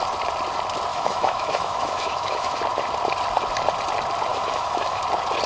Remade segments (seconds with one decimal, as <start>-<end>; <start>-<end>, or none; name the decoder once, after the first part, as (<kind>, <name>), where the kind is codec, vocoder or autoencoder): 0.9-2.6 (autoencoder, DAC-VAE); 4.3-5.0